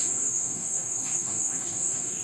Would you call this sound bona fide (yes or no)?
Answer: no